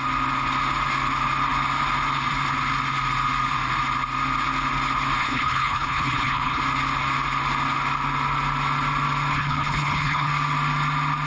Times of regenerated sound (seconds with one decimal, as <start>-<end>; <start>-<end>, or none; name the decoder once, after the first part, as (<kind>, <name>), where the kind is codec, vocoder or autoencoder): 5.2-6.6 (codec, HILCodec); 9.3-10.3